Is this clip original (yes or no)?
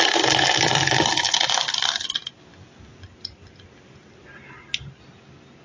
yes